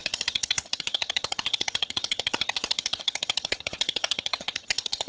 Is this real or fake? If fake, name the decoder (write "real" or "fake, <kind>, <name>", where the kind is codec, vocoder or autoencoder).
fake, vocoder, HiFi-GAN